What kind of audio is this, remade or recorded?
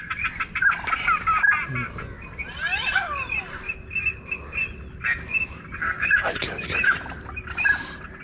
recorded